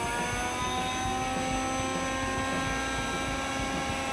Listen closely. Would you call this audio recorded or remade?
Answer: recorded